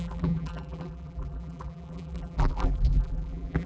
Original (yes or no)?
no